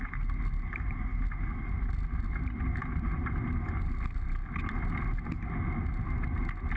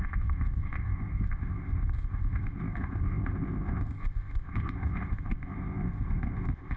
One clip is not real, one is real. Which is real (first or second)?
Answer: first